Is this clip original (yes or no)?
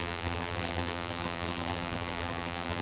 no